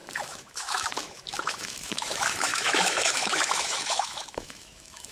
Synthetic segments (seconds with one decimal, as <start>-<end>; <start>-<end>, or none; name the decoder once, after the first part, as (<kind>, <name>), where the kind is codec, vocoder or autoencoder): 0.0-5.1 (autoencoder, DAC-VAE)

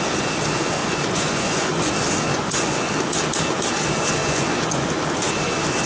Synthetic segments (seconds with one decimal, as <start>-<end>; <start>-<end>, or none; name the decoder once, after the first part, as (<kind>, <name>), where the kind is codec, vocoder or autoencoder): 0.8-1.9 (vocoder, Vocos); 2.3-2.9; 4.2-4.9

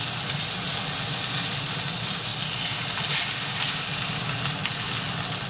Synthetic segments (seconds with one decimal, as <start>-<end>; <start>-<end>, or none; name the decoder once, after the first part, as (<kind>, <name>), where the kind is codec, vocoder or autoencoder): none